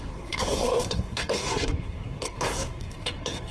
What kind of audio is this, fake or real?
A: fake